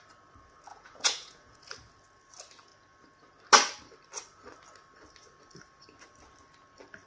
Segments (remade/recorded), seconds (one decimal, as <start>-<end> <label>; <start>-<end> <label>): 0.0-0.7 recorded; 0.7-1.6 remade; 1.6-7.1 recorded